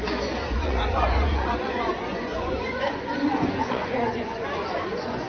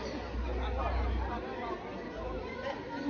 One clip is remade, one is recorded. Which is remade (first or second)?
first